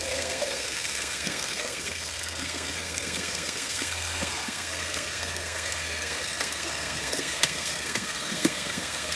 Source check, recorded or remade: remade